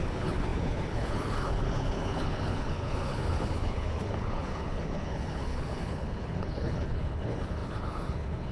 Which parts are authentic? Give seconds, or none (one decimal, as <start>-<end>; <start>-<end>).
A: none